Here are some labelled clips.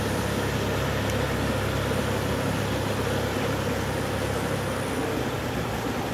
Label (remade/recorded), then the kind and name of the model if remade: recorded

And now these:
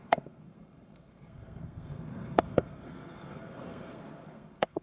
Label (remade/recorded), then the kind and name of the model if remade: remade, codec, SNAC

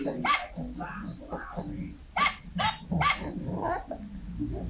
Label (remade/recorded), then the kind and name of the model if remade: recorded